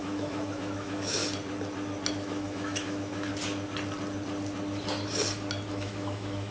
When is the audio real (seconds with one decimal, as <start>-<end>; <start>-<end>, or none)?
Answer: 1.2-2.1; 3.3-5.7